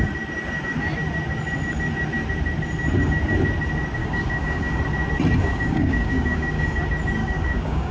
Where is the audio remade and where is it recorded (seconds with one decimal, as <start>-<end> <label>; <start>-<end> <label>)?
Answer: 0.0-4.0 recorded; 4.0-4.8 remade; 4.8-5.4 recorded; 5.4-6.8 remade; 6.8-7.2 recorded; 7.2-7.9 remade